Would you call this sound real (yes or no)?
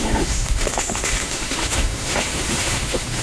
no